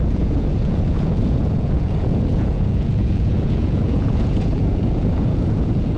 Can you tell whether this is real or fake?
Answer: fake